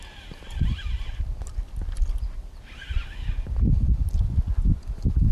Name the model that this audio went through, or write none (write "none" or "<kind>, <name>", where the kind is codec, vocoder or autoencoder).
vocoder, BigVGAN v2